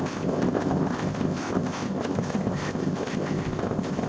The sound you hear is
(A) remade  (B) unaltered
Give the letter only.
A